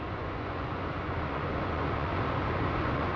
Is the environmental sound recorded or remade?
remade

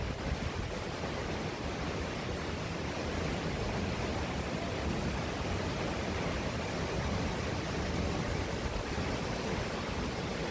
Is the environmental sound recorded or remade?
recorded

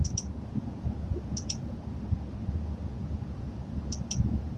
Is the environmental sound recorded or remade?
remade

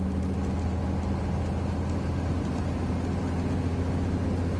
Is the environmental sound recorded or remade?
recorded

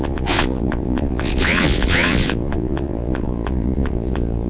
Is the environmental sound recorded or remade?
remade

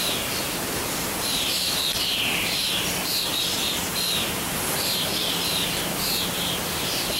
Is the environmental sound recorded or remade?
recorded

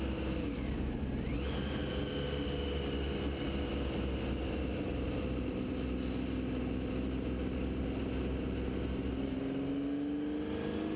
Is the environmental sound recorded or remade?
recorded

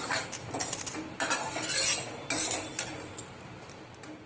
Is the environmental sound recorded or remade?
recorded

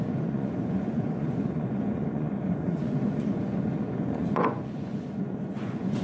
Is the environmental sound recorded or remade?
remade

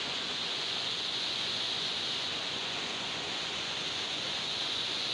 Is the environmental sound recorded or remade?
remade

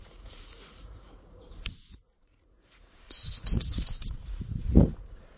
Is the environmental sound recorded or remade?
remade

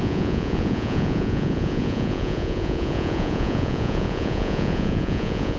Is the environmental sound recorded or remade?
remade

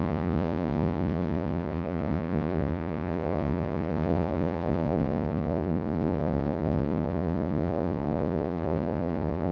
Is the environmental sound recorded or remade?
remade